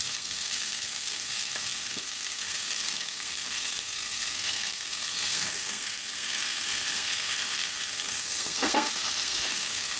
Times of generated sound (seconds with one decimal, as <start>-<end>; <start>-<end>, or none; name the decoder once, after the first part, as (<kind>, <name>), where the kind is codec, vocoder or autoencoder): 0.0-10.0 (codec, SNAC)